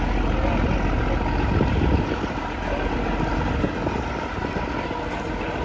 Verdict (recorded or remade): recorded